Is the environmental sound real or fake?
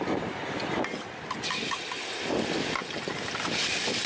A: real